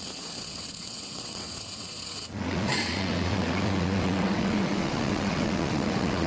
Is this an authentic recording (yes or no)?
no